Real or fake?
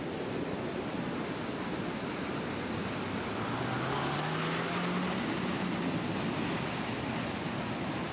real